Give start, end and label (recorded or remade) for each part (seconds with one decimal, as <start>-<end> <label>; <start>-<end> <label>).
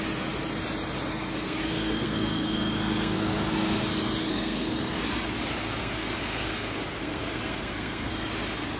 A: 0.0-1.1 recorded; 1.1-3.8 remade; 3.8-4.2 recorded; 4.2-5.0 remade; 5.0-5.8 recorded; 5.8-8.1 remade; 8.1-8.8 recorded